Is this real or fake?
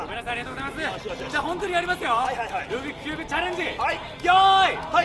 real